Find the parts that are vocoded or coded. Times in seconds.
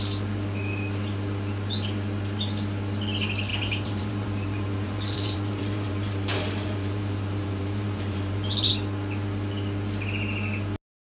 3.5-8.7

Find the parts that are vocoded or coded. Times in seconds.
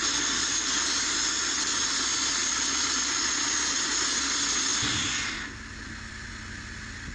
0.4-1.3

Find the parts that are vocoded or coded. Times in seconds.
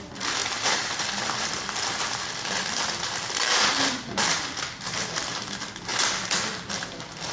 0.4-4.6; 5.9-6.5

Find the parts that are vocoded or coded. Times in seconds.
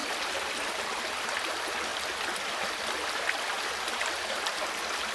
1.5-1.9; 2.4-3.5; 4.5-5.1